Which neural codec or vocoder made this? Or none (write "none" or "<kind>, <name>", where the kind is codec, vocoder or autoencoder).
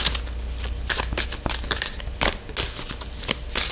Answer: none